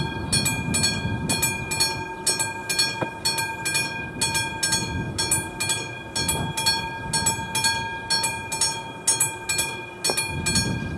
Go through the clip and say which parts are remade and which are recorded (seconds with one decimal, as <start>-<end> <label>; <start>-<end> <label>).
0.0-11.0 recorded

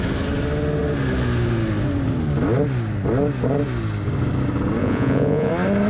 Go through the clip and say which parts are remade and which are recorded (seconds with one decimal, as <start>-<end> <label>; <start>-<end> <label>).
0.0-4.8 recorded; 4.8-5.5 remade; 5.5-5.9 recorded